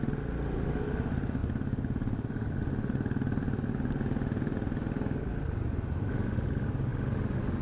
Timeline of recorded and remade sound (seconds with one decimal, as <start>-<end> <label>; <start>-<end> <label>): 0.0-7.6 recorded